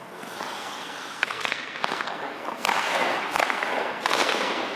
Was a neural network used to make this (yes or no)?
yes